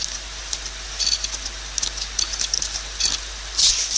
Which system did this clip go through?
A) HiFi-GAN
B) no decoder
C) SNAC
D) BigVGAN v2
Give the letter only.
B